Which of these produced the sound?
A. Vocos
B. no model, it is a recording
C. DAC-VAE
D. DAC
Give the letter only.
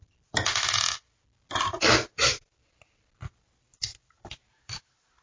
B